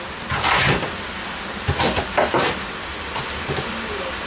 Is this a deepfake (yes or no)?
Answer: no